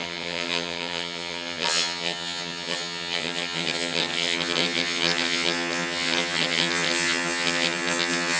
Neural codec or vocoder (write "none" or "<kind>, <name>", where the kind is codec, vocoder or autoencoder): vocoder, HiFi-GAN